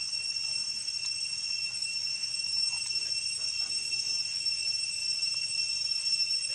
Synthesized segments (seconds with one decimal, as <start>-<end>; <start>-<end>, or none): none